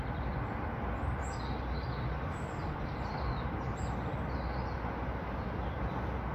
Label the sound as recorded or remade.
recorded